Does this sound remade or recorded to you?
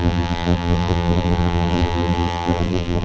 remade